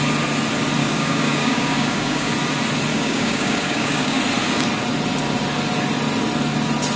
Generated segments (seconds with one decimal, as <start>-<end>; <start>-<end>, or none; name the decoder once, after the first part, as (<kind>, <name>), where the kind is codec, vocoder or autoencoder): 0.8-2.3 (codec, DAC); 2.9-4.2